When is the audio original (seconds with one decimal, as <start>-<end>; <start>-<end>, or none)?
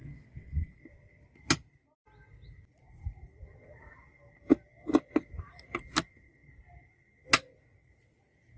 0.8-8.6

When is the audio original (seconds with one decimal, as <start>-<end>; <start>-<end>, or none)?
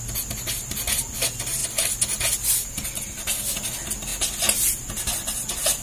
0.0-5.8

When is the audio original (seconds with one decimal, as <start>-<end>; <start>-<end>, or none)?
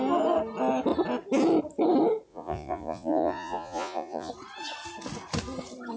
0.0-2.3; 4.3-6.0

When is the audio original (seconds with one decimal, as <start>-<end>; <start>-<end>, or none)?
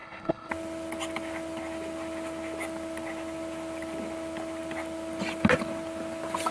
0.5-6.5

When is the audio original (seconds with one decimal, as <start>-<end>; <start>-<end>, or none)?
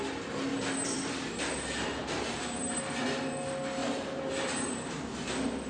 0.0-0.5; 2.8-3.8; 5.3-5.7